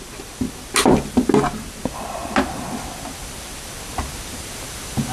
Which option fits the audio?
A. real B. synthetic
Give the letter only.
A